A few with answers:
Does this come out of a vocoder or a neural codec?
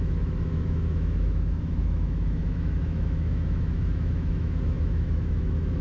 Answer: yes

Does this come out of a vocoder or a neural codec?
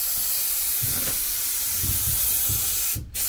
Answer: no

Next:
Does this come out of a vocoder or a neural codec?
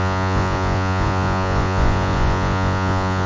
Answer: yes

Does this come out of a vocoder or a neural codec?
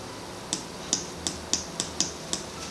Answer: no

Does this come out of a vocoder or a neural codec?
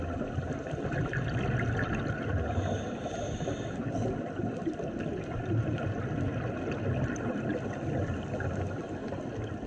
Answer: no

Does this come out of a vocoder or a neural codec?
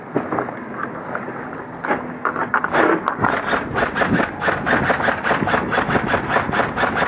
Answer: no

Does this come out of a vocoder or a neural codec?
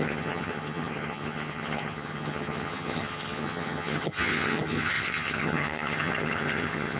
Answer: yes